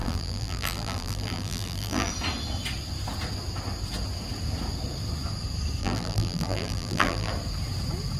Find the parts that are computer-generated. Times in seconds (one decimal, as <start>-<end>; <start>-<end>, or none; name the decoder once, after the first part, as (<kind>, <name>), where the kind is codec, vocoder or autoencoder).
0.0-2.1 (vocoder, BigVGAN v2); 5.8-7.3